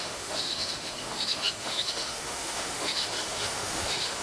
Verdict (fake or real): fake